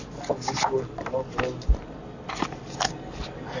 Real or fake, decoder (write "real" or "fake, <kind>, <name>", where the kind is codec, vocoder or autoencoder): real